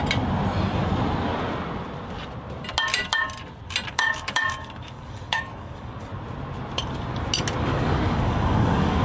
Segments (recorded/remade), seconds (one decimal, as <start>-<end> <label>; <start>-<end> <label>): 0.0-3.9 recorded; 3.9-6.1 remade; 6.1-7.6 recorded; 7.6-9.0 remade